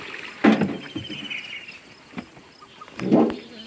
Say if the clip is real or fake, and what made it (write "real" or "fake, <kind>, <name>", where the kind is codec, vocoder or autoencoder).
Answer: real